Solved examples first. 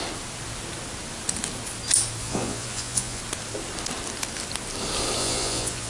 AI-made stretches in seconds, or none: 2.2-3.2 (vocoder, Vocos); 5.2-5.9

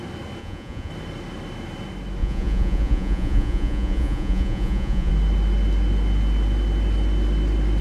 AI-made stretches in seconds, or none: 0.4-0.9 (vocoder, Vocos); 2.2-5.1

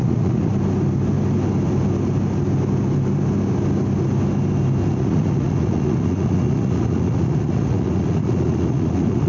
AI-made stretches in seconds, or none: 0.0-0.5 (vocoder, Vocos); 5.0-9.3

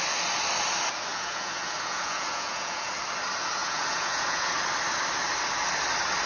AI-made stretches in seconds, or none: 1.1-2.9 (vocoder, Vocos); 3.6-4.5

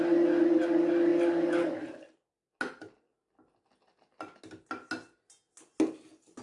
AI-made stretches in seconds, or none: none